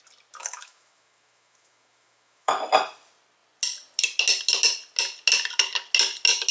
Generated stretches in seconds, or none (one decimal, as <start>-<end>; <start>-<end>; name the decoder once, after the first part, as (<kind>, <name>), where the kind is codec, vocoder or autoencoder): 0.4-2.6 (autoencoder, DAC-VAE)